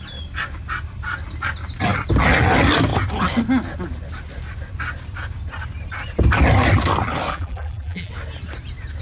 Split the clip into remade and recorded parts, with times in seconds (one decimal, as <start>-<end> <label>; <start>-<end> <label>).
0.0-7.3 recorded; 7.3-8.1 remade; 8.1-9.0 recorded